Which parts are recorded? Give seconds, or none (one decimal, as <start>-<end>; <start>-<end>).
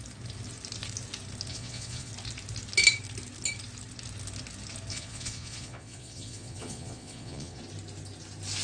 0.0-1.5; 2.1-4.9; 7.6-8.6